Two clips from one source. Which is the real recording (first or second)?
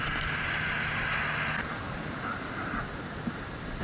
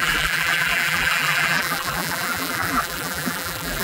first